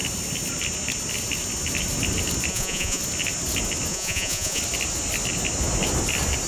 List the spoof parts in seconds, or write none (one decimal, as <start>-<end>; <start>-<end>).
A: 2.5-3.0; 3.9-4.6